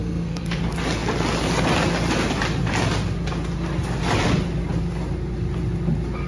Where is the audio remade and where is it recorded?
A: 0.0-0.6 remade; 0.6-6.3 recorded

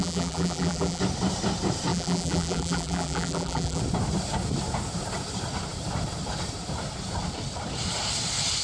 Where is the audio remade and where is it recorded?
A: 0.0-1.0 remade; 1.0-1.9 recorded; 1.9-3.8 remade; 3.8-8.6 recorded

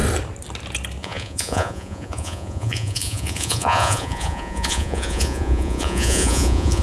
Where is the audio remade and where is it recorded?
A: 0.0-1.0 recorded; 1.0-6.8 remade

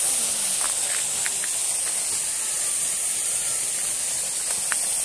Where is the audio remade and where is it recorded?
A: 0.0-5.0 recorded